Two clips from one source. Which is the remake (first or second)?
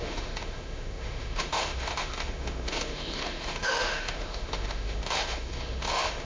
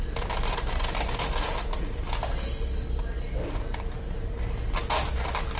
first